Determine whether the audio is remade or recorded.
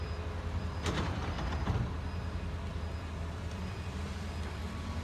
remade